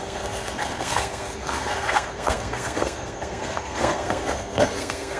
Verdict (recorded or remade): remade